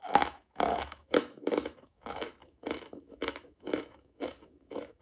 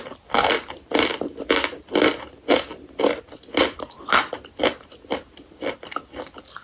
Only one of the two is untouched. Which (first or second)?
second